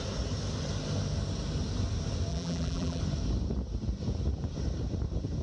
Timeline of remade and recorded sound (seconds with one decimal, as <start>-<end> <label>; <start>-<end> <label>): 0.0-2.3 recorded; 2.3-3.0 remade; 3.0-5.4 recorded